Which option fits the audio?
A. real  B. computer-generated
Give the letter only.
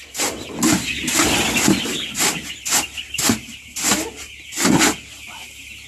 A